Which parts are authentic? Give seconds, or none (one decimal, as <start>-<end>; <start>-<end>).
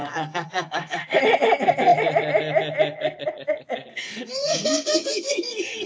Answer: 1.2-3.9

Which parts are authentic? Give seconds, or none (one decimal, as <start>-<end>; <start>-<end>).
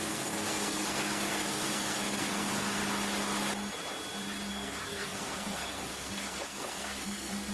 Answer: 2.8-4.5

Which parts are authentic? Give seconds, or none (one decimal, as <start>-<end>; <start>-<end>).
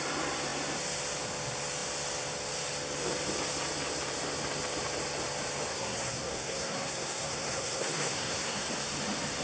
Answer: 0.0-5.7; 8.7-9.4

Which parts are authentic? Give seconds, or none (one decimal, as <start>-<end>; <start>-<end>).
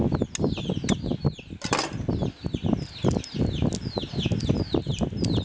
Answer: 0.0-5.4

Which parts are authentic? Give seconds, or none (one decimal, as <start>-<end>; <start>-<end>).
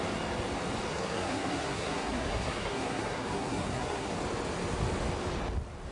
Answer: 0.0-0.9; 4.1-5.9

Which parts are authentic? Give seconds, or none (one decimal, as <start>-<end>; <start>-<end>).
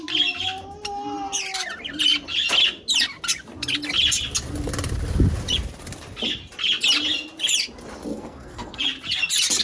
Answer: 0.0-8.1; 8.8-9.6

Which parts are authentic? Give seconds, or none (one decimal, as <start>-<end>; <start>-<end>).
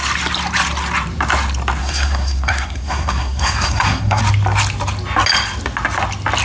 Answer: 0.0-1.8; 4.2-6.4